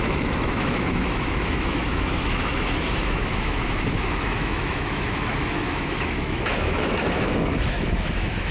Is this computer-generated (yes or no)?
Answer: yes